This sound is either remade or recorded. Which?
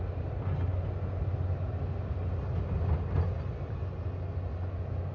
recorded